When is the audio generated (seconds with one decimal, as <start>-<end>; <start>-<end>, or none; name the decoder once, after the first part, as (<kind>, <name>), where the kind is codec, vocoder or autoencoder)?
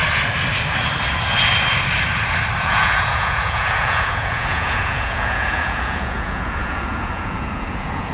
2.6-8.1 (vocoder, Vocos)